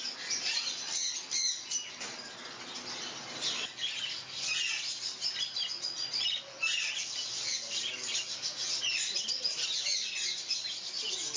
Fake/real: real